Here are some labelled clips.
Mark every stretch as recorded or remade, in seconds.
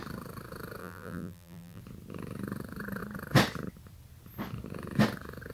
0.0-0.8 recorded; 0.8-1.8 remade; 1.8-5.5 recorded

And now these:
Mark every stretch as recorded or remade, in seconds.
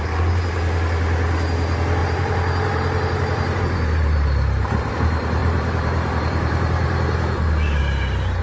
0.0-2.0 recorded; 2.0-4.9 remade; 4.9-5.4 recorded; 5.4-7.8 remade; 7.8-8.4 recorded